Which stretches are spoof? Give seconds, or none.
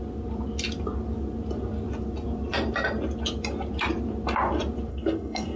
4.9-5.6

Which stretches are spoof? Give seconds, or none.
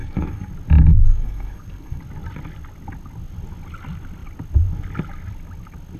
0.0-0.5; 0.9-2.0